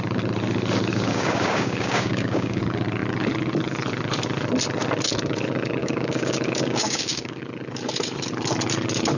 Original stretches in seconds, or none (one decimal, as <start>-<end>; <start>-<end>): 0.0-0.9; 2.6-5.8; 7.4-9.2